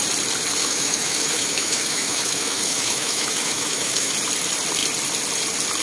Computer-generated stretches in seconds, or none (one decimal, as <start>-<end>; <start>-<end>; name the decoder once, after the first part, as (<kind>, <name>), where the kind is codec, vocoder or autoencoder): 0.6-4.1 (autoencoder, DAC-VAE)